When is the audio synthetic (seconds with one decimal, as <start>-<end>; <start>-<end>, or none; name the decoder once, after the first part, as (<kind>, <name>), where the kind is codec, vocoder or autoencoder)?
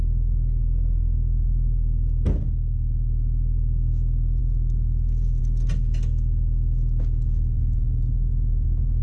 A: none